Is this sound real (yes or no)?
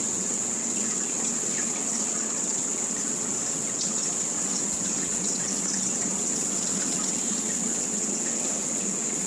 no